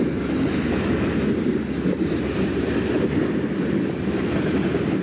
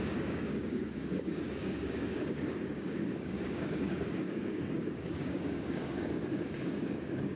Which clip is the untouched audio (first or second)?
first